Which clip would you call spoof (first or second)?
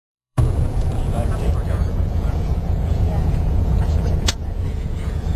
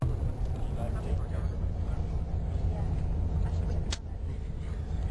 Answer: first